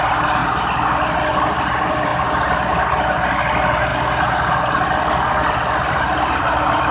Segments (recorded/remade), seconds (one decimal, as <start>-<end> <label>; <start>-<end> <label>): 0.0-0.4 remade; 0.4-1.3 recorded; 1.3-2.1 remade; 2.1-3.3 recorded; 3.3-3.9 remade; 3.9-5.5 recorded; 5.5-6.9 remade